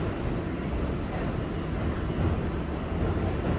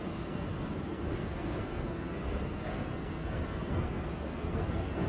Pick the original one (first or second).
first